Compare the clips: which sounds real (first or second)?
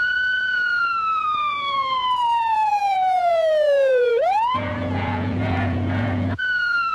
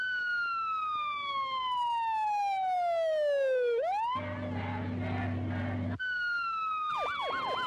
second